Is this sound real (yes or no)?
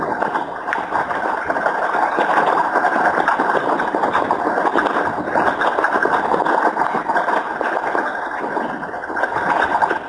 yes